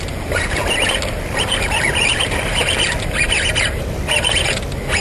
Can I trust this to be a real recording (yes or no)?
yes